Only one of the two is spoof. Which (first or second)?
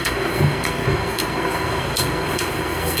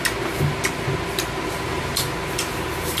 first